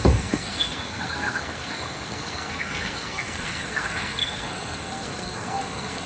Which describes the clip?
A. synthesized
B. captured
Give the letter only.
A